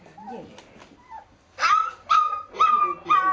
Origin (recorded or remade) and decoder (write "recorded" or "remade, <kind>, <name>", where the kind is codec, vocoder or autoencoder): recorded